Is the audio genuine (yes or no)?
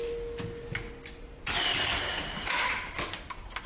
yes